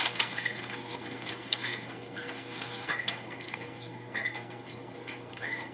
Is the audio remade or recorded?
remade